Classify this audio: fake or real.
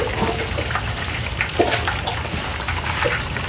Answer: real